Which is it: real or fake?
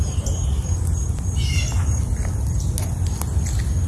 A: real